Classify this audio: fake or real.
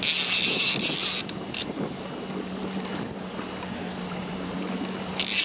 real